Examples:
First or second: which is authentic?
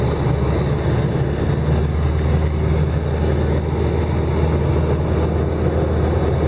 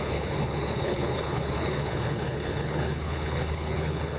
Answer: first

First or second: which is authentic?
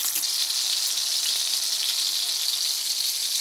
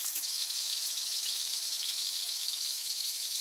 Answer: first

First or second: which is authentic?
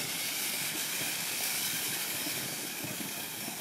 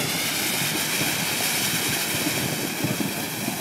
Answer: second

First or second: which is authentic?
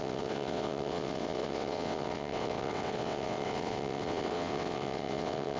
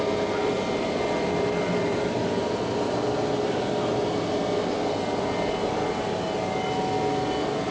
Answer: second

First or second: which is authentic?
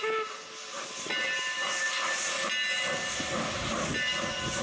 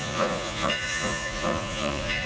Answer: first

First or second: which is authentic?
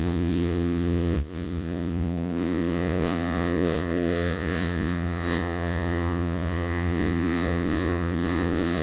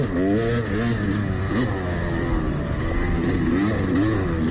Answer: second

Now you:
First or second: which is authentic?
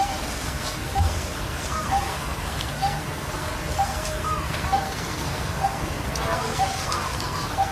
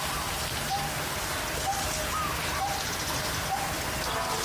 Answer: second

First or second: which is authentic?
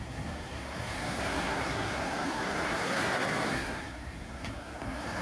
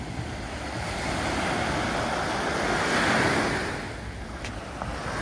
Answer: second